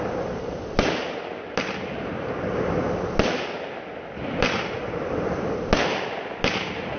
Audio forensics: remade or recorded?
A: recorded